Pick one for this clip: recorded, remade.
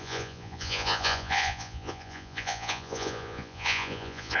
remade